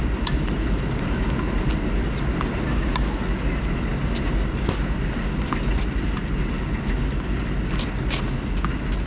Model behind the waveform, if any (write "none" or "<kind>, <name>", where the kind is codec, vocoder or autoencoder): none